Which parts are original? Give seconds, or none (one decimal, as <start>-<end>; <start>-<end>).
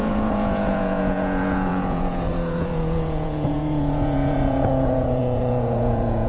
none